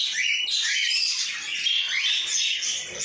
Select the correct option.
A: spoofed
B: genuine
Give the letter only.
B